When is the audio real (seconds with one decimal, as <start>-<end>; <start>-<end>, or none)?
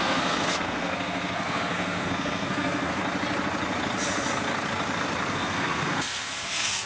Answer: 3.0-5.3